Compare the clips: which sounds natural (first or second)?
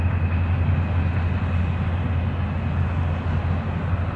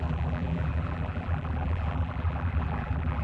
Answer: first